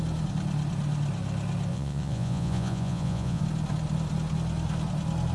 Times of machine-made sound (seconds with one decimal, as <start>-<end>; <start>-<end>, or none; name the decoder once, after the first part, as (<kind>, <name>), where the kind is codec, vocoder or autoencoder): 1.7-3.4 (vocoder, Vocos)